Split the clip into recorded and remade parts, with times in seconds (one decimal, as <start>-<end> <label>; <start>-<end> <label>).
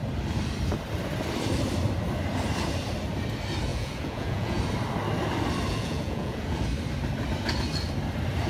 0.0-3.7 recorded; 3.7-4.6 remade; 4.6-5.7 recorded; 5.7-6.6 remade; 6.6-8.5 recorded